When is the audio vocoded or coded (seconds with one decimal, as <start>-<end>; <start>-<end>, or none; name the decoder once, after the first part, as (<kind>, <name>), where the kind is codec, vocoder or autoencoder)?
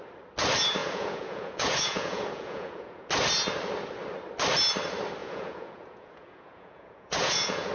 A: 0.8-3.1 (vocoder, Vocos); 5.2-7.7